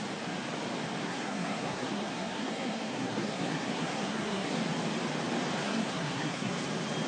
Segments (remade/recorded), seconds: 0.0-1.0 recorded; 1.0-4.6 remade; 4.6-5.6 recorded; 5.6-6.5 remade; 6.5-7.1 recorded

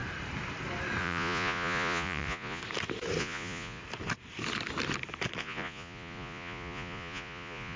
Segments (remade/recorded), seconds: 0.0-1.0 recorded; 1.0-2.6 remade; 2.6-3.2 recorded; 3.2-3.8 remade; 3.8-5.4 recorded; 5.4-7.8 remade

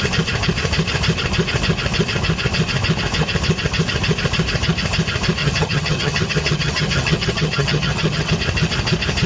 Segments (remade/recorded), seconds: 0.0-5.4 recorded; 5.4-8.3 remade; 8.3-9.3 recorded

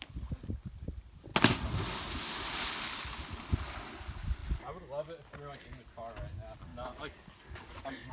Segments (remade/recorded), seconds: 0.0-6.7 recorded; 6.7-8.1 remade

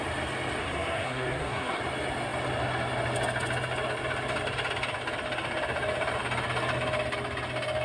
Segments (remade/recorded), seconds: 0.0-0.6 recorded; 0.6-1.8 remade; 1.8-7.8 recorded